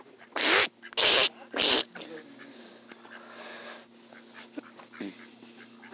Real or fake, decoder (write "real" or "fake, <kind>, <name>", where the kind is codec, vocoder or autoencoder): real